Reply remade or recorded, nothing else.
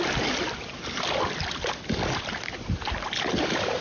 recorded